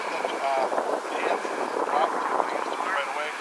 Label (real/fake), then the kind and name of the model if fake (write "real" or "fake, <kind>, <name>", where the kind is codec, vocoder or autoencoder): real